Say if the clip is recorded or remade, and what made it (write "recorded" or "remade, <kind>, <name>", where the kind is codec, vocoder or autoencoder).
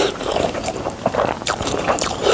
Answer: remade, vocoder, BigVGAN v2